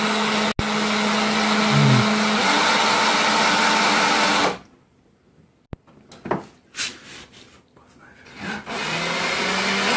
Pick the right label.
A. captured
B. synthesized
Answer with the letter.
A